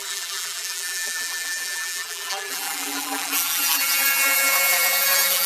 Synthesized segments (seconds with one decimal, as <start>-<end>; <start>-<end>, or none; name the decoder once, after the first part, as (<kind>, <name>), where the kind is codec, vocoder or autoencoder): 0.0-5.5 (vocoder, BigVGAN v2)